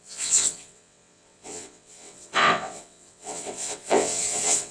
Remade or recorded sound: remade